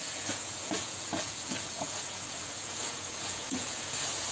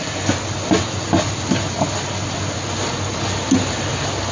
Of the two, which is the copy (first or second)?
first